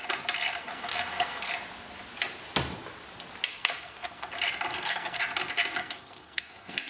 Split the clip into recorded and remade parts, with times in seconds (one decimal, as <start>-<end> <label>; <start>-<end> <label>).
0.0-0.6 recorded; 0.6-1.5 remade; 1.5-3.5 recorded; 3.5-4.3 remade; 4.3-4.7 recorded; 4.7-5.2 remade; 5.2-5.8 recorded; 5.8-6.9 remade